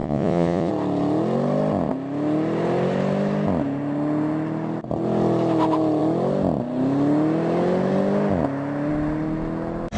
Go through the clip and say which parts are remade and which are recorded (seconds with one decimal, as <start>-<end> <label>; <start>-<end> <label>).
0.0-0.7 remade; 0.7-10.0 recorded